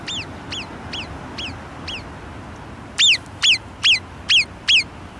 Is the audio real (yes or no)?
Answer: yes